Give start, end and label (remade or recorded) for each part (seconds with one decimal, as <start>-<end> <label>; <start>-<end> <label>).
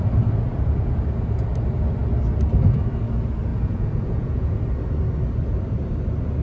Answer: 0.0-3.5 recorded; 3.5-4.5 remade; 4.5-6.4 recorded